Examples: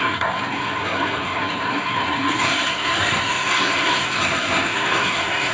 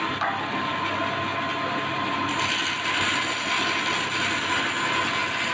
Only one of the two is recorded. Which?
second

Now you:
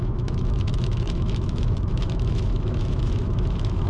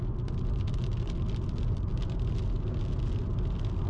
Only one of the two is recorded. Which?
second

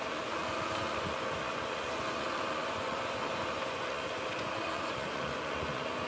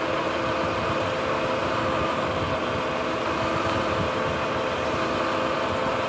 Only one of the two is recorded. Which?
second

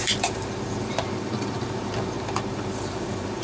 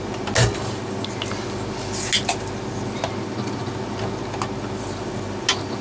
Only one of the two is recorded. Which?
second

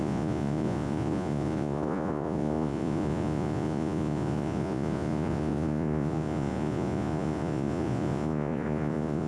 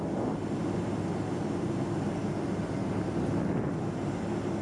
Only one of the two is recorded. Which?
second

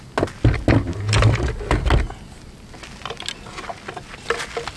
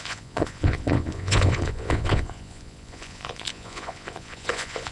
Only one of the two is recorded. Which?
first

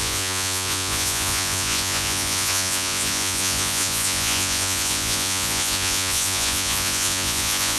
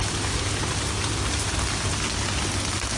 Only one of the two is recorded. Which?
second